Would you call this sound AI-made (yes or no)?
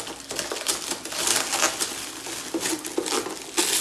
no